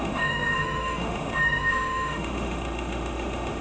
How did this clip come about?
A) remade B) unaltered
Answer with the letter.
A